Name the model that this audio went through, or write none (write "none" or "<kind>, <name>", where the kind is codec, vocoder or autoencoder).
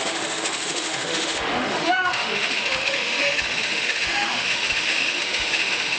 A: autoencoder, DAC-VAE